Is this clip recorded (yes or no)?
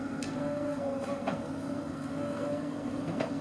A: no